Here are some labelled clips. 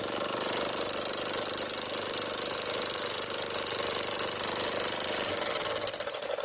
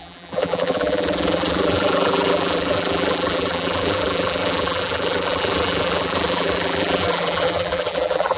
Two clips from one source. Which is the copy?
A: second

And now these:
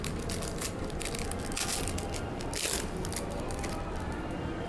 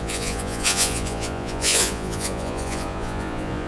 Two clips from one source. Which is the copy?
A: second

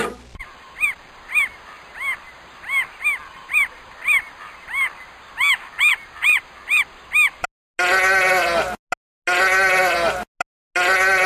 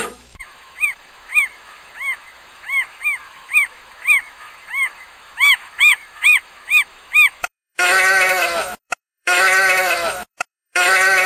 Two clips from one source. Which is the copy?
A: second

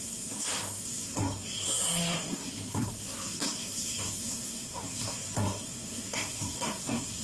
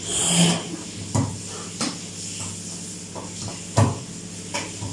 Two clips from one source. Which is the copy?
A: first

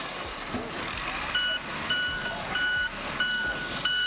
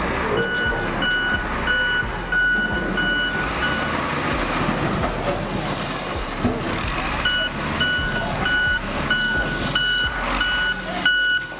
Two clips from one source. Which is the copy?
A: first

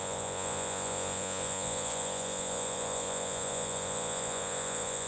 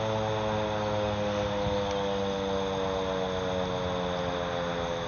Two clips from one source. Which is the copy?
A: first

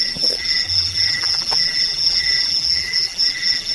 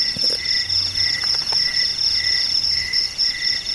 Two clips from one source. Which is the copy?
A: first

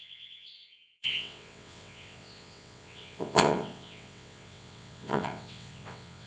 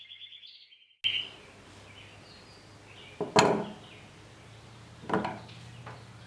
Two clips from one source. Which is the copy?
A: first